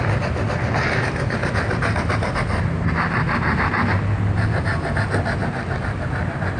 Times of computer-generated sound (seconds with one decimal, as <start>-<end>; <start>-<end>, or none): none